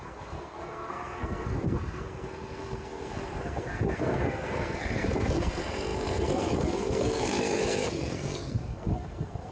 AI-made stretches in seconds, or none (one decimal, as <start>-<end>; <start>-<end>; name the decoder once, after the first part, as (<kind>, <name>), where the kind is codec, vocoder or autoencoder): 0.0-9.5 (codec, SNAC)